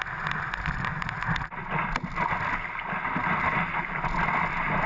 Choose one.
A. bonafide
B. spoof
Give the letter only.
A